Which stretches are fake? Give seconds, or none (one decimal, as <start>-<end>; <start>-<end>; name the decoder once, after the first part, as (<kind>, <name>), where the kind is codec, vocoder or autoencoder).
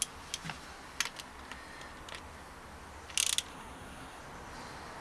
3.5-4.2 (codec, SNAC)